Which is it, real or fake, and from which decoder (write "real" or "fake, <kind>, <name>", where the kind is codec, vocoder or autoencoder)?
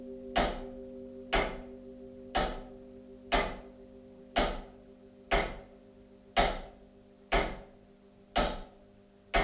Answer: real